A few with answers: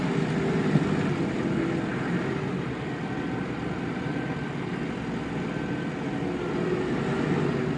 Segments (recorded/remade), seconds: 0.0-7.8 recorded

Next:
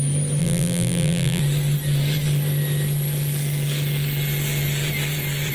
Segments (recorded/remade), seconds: 0.0-0.4 recorded; 0.4-1.4 remade; 1.4-5.5 recorded

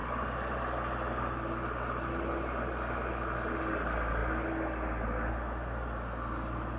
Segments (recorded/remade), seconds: 0.0-6.8 recorded

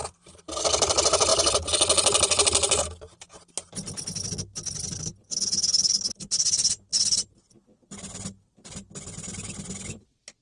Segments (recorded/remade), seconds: 0.0-10.4 recorded